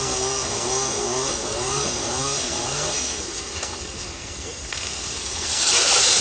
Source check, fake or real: fake